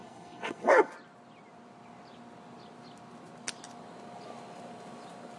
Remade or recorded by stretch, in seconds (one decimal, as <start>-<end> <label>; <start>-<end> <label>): 0.0-0.9 remade; 0.9-5.4 recorded